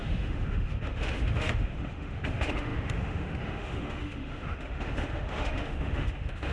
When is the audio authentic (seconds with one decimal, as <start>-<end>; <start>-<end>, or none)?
none